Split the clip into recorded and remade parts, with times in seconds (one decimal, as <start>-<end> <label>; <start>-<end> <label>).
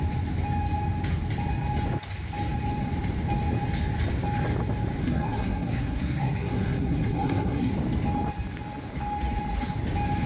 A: 0.0-5.0 recorded; 5.0-7.7 remade; 7.7-10.3 recorded